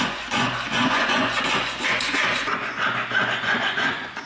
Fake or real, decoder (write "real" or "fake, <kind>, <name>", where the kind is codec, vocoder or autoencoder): fake, vocoder, Vocos